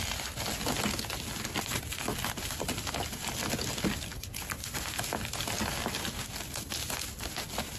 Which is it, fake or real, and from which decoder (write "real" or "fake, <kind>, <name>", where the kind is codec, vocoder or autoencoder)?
real